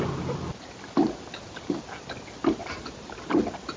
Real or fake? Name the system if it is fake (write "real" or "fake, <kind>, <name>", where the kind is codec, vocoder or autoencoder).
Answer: real